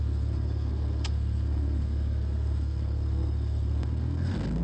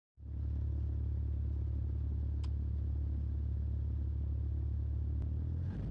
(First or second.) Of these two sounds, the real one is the second